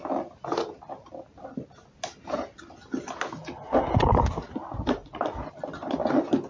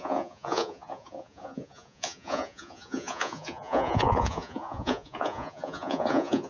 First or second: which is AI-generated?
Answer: second